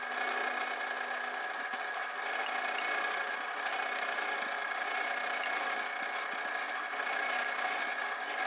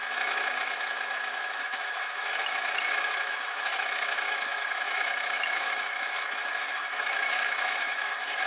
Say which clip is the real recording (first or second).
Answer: first